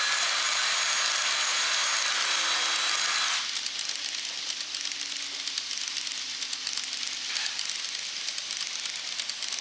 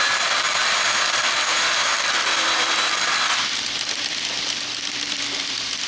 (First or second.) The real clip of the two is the first